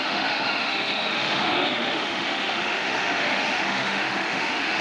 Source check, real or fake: fake